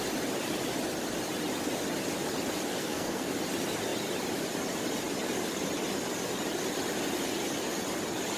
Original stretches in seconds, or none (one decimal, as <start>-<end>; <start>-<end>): 0.0-2.7; 3.3-8.4